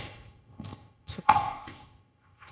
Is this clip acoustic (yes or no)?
no